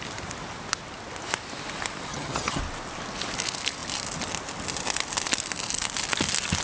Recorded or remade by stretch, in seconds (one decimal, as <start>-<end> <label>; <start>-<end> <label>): 0.0-2.1 recorded; 2.1-2.6 remade; 2.6-6.6 recorded